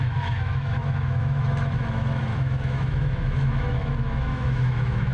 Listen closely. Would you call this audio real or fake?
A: fake